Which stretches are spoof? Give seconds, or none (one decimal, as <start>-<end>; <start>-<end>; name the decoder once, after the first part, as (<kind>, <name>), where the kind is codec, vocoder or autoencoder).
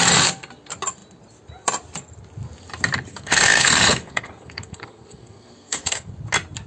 3.1-6.1 (codec, SNAC)